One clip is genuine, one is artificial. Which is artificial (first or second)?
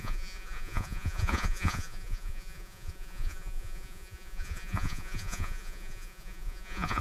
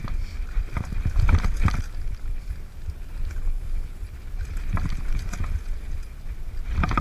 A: first